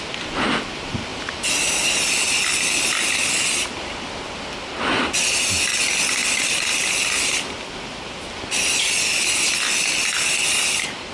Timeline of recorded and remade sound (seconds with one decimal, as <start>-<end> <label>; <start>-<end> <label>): 0.0-11.1 recorded